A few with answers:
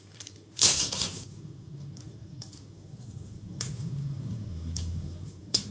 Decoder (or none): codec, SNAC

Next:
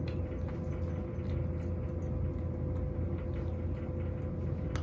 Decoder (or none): none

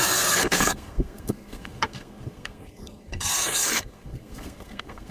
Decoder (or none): codec, SNAC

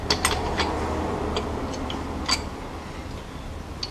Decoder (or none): none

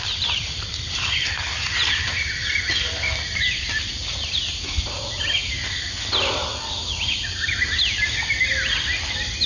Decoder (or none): none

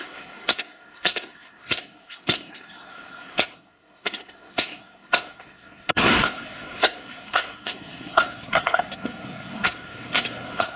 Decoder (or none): codec, SNAC